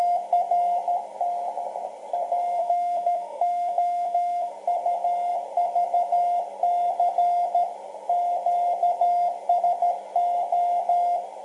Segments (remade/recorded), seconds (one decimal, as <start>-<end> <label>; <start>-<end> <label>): 0.0-2.6 recorded; 2.6-4.5 remade; 4.5-11.4 recorded